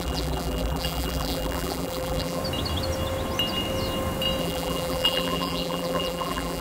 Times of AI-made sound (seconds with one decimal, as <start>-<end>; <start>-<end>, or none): 0.0-2.4; 4.4-6.6